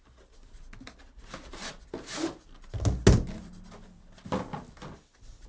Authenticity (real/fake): real